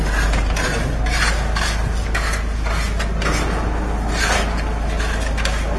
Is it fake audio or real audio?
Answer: real